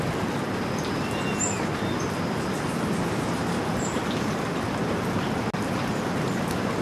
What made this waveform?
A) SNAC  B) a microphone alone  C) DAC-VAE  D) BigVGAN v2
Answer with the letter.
B